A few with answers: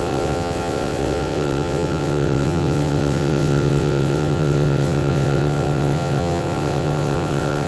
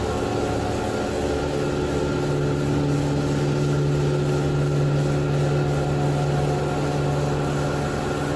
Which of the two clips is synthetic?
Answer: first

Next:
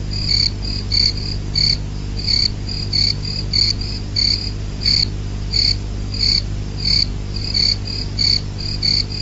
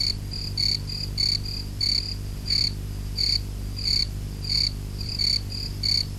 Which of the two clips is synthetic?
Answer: second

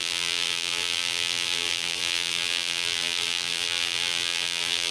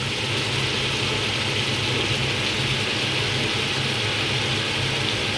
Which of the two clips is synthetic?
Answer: first